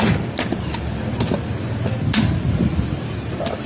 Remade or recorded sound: recorded